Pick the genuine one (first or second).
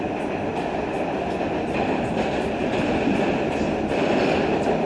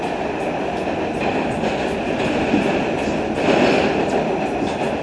second